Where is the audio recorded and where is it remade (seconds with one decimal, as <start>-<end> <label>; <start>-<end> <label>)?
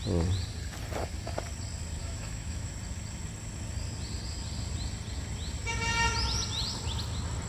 0.0-2.0 recorded; 2.0-2.7 remade; 2.7-7.5 recorded